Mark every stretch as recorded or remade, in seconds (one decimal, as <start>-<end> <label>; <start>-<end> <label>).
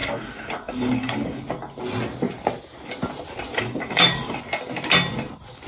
0.0-1.4 remade; 1.4-3.5 recorded; 3.5-4.4 remade; 4.4-5.7 recorded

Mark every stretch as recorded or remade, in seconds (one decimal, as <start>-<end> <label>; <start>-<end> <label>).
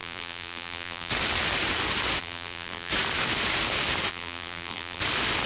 0.0-1.1 remade; 1.1-2.2 recorded; 2.2-2.9 remade; 2.9-4.1 recorded; 4.1-5.0 remade; 5.0-5.5 recorded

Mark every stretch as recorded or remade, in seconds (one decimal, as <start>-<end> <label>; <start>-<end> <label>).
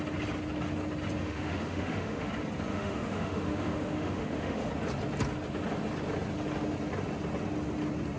0.0-1.2 recorded; 1.2-2.3 remade; 2.3-2.7 recorded; 2.7-4.7 remade; 4.7-8.2 recorded